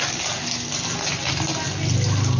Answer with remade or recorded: recorded